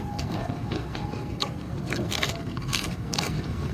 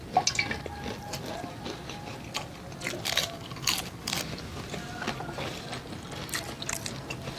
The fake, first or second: first